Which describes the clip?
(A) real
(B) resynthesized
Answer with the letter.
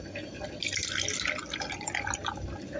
A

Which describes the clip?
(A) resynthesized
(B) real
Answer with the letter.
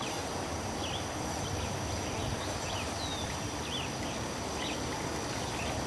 B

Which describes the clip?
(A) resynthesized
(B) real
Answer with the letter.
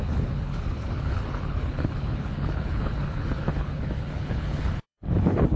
A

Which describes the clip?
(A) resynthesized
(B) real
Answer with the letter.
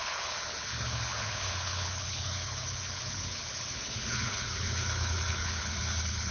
A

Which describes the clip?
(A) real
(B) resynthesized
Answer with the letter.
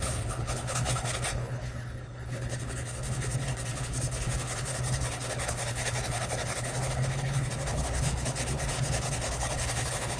B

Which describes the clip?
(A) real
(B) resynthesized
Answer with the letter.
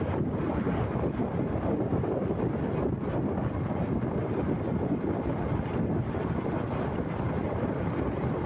A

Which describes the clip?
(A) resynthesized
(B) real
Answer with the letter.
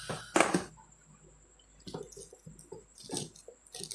B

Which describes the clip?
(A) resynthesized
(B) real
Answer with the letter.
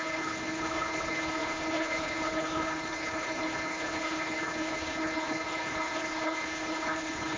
A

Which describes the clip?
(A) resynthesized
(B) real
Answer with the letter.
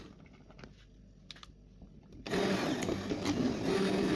B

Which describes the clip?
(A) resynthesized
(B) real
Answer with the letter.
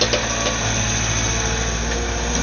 B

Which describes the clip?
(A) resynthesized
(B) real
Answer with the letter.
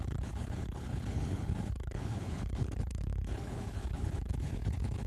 A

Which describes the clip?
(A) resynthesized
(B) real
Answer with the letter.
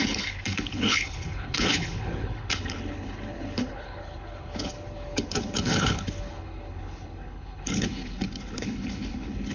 A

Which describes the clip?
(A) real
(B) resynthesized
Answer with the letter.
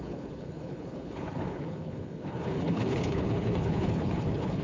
B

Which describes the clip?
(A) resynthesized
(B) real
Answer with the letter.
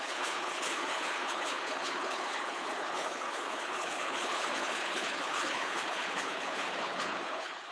A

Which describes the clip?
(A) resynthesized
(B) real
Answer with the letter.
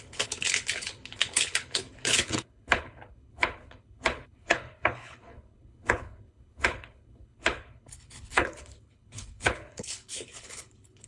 A